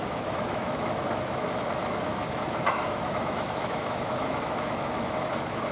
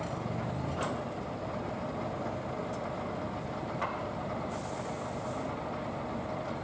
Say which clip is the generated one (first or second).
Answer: first